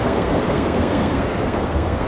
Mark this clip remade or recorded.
remade